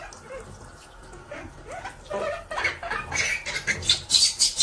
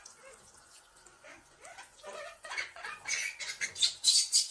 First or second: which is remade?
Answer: second